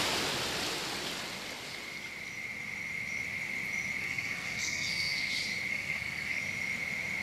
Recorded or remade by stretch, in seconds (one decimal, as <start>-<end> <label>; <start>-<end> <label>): 0.0-4.0 recorded; 4.0-5.3 remade; 5.3-5.7 recorded; 5.7-6.4 remade; 6.4-7.2 recorded